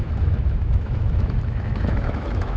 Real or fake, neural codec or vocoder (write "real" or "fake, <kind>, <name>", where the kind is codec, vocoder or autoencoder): fake, autoencoder, DAC-VAE